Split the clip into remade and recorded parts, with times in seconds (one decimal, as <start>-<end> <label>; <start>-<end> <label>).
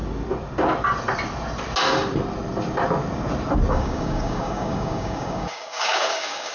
0.0-3.7 recorded; 3.7-6.5 remade